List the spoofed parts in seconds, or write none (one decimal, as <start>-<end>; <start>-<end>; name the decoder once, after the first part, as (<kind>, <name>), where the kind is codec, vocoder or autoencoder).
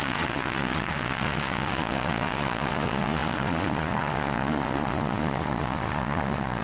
0.0-6.6 (vocoder, Vocos)